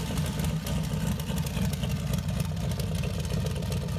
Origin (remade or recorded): recorded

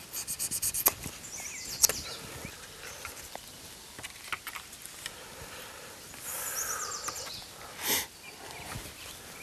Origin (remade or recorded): recorded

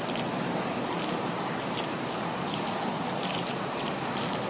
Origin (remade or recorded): remade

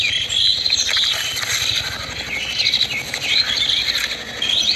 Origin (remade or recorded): recorded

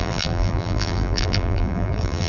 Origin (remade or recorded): remade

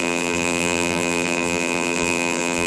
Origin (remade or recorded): remade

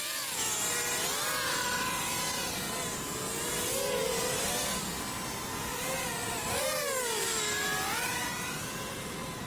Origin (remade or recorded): recorded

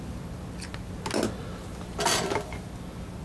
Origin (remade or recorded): recorded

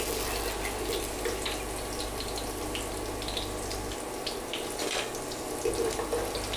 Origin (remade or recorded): recorded